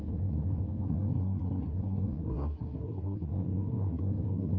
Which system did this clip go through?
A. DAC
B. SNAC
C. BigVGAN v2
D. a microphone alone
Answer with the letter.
B